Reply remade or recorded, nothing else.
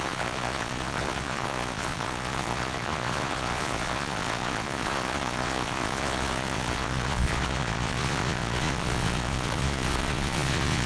remade